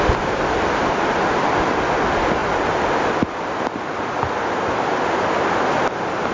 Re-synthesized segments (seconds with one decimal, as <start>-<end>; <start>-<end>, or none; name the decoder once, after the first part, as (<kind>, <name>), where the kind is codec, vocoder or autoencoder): none